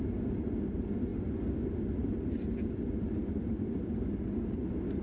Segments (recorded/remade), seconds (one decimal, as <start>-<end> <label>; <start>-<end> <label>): 0.0-5.0 recorded